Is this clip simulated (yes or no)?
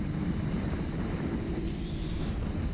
yes